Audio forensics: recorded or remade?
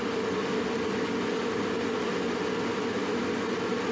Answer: recorded